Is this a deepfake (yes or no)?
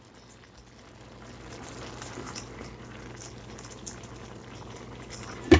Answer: no